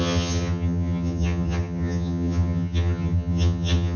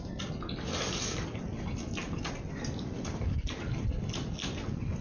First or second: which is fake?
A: first